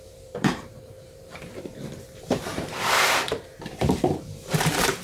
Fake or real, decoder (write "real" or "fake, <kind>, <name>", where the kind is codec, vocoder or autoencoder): fake, vocoder, BigVGAN v2